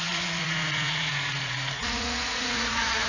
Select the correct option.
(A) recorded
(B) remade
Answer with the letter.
B